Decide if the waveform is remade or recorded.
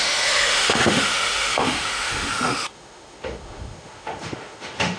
remade